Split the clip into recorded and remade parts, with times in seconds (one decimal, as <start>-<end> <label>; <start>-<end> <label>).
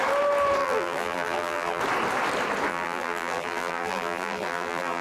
0.0-0.6 recorded; 0.6-1.8 remade; 1.8-2.7 recorded; 2.7-5.0 remade